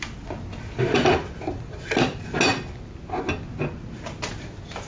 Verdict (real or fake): real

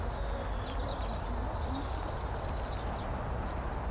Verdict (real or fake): real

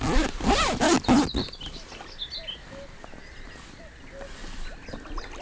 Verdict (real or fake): real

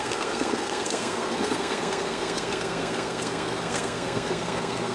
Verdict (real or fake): fake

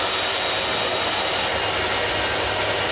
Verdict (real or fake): real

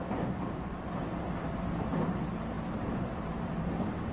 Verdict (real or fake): fake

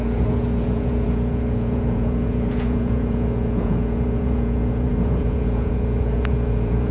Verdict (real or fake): fake